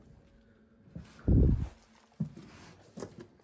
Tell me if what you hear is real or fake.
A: real